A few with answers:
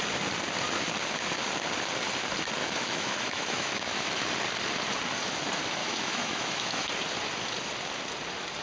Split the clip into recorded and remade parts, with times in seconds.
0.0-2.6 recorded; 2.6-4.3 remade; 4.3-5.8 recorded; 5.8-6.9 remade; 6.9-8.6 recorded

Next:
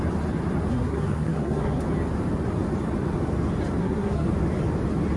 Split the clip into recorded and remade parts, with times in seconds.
0.0-0.7 recorded; 0.7-1.8 remade; 1.8-3.8 recorded; 3.8-4.3 remade; 4.3-5.2 recorded

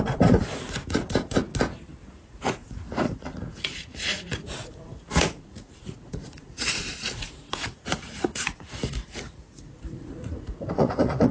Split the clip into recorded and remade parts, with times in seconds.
0.0-1.5 remade; 1.5-2.1 recorded; 2.1-11.3 remade

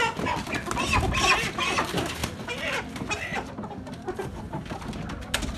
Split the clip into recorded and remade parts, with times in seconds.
0.0-2.2 recorded; 2.2-4.4 remade; 4.4-5.6 recorded

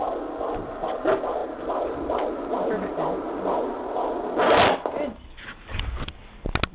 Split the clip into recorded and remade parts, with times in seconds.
0.0-6.7 recorded